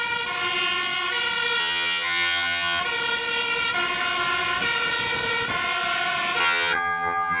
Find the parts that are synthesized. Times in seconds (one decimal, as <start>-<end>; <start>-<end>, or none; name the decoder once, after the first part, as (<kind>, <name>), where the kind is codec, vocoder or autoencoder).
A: 1.6-2.8 (vocoder, HiFi-GAN); 6.4-7.4